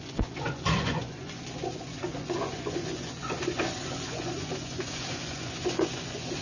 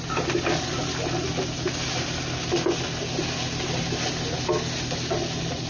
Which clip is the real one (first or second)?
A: second